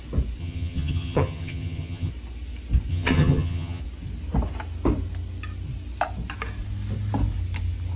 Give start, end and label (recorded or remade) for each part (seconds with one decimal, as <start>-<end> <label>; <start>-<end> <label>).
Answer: 0.0-0.4 recorded; 0.4-2.1 remade; 2.1-2.9 recorded; 2.9-3.8 remade; 3.8-8.0 recorded